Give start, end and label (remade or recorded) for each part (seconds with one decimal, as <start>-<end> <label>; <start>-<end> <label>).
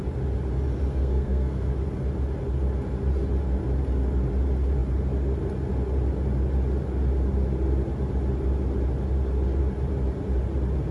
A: 0.0-0.9 recorded; 0.9-1.7 remade; 1.7-10.9 recorded